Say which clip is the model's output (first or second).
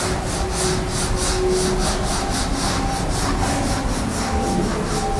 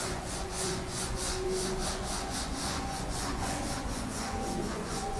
second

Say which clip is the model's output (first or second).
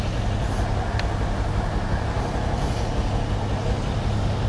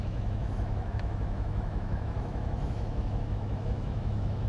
second